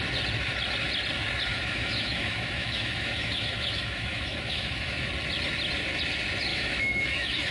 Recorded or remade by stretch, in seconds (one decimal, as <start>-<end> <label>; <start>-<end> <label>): 0.0-1.5 recorded; 1.5-5.1 remade; 5.1-6.5 recorded; 6.5-7.5 remade